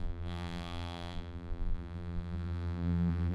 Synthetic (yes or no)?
yes